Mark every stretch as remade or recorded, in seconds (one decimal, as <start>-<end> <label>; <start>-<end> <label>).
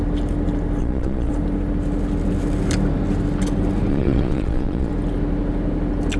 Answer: 0.0-0.8 recorded; 0.8-1.3 remade; 1.3-3.9 recorded; 3.9-4.9 remade; 4.9-6.2 recorded